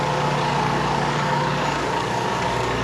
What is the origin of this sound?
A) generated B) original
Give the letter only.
A